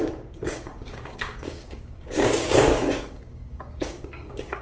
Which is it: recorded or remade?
remade